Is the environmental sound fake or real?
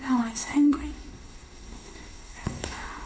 fake